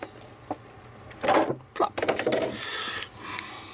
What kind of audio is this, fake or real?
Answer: real